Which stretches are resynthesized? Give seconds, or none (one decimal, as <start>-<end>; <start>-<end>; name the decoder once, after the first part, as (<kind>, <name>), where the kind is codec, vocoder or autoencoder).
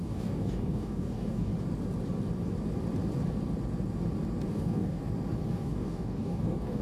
0.0-1.5 (codec, DAC); 4.5-5.0; 5.5-6.8